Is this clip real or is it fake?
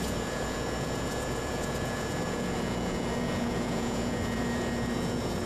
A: fake